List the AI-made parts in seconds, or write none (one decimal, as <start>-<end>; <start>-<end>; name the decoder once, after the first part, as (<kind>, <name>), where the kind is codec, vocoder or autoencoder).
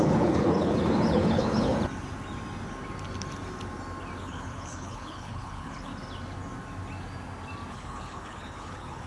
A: 0.0-1.7 (codec, HILCodec); 4.2-5.9; 7.7-9.1